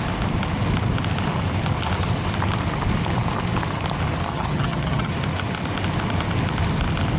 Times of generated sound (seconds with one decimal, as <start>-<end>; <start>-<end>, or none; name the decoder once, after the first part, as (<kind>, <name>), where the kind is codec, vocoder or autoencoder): 4.3-5.1 (vocoder, HiFi-GAN)